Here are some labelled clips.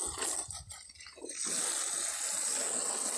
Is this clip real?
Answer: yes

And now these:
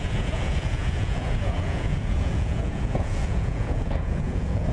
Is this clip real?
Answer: no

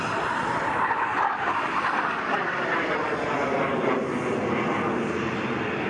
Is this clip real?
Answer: yes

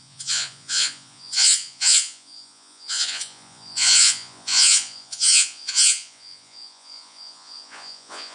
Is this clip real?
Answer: no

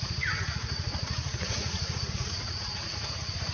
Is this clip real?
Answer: no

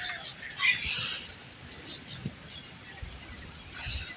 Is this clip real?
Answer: yes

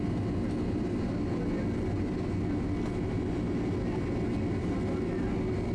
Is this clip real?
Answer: yes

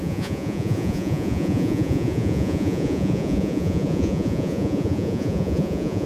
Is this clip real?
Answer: no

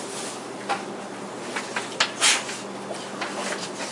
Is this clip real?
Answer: yes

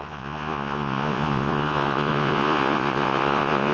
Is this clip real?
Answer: no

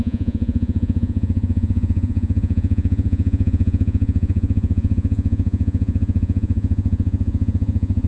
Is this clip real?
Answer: no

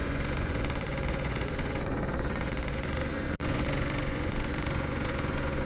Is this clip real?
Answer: no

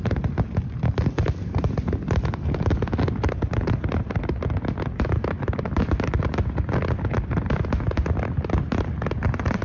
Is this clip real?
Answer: yes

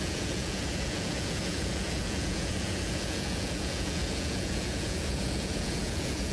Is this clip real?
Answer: no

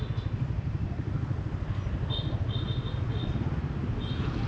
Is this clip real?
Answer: yes